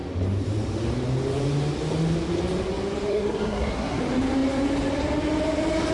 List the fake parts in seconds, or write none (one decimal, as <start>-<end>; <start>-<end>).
3.1-4.0

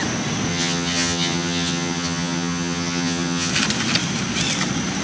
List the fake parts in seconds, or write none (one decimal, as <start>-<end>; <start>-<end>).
0.5-3.5

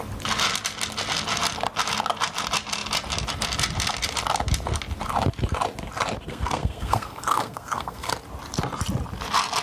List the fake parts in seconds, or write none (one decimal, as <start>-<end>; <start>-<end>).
6.3-8.1

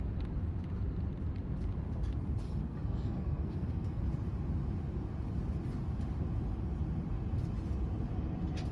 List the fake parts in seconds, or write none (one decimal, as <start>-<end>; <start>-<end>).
2.6-4.0